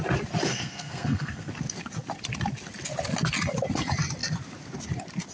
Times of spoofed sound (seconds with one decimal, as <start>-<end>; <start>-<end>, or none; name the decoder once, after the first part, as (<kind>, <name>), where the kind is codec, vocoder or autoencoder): 0.5-1.5 (codec, SNAC)